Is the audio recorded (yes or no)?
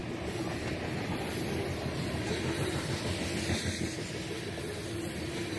yes